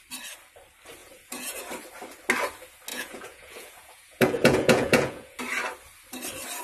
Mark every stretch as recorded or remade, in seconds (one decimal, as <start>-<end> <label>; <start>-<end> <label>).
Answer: 0.0-1.0 recorded; 1.0-1.6 remade; 1.6-2.9 recorded; 2.9-5.4 remade; 5.4-6.6 recorded